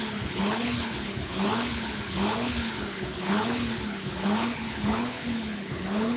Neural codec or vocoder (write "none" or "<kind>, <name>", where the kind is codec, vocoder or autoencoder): codec, HILCodec